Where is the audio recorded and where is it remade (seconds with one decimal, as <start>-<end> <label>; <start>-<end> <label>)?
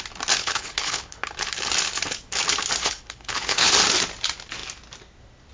0.0-0.4 recorded; 0.4-1.2 remade; 1.2-2.8 recorded; 2.8-3.7 remade; 3.7-5.5 recorded